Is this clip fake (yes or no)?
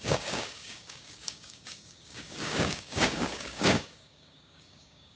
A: yes